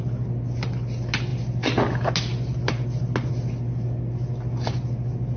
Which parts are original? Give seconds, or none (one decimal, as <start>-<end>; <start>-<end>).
0.0-5.4